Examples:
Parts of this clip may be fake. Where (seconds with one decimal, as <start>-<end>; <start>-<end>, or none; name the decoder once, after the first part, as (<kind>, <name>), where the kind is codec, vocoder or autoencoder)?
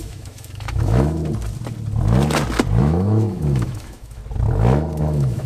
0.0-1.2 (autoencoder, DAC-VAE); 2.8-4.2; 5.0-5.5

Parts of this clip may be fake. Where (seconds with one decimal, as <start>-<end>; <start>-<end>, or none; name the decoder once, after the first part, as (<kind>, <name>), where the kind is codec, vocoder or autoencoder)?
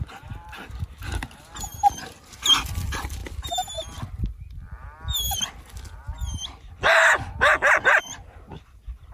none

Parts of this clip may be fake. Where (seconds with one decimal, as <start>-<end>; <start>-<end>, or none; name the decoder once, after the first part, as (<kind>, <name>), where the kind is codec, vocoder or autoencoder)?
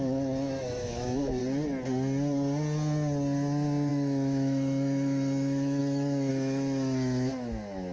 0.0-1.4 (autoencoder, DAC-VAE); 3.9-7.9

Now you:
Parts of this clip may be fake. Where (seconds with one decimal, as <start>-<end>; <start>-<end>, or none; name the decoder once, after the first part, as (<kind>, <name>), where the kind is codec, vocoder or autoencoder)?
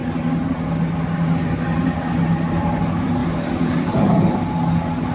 none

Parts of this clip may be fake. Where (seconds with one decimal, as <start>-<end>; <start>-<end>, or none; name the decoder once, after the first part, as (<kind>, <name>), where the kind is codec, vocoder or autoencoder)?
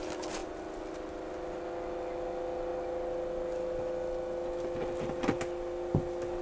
none